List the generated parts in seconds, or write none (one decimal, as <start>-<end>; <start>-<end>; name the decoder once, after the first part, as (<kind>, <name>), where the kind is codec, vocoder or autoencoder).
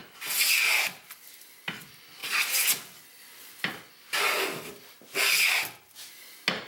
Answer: none